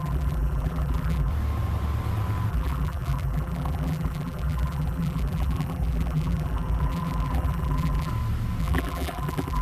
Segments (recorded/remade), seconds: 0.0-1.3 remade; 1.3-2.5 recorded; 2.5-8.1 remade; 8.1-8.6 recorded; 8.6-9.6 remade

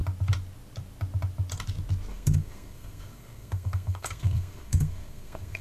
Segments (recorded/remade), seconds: 0.0-2.1 recorded; 2.1-5.6 remade

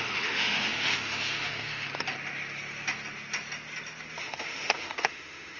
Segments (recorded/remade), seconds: 0.0-1.9 remade; 1.9-4.2 recorded; 4.2-5.6 remade